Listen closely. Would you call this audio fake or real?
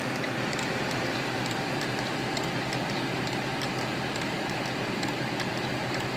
real